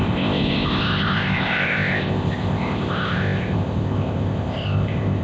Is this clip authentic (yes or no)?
no